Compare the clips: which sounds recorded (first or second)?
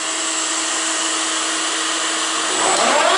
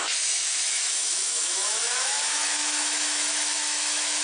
first